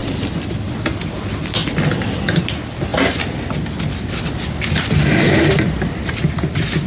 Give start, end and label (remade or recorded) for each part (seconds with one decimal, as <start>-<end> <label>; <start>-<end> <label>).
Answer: 0.0-6.9 recorded